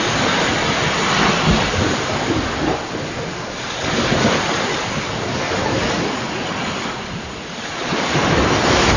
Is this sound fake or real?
real